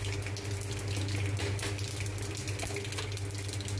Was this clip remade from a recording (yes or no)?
no